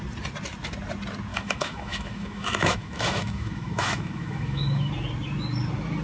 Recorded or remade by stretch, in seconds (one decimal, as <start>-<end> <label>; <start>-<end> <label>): 0.0-1.3 recorded; 1.3-4.9 remade; 4.9-6.0 recorded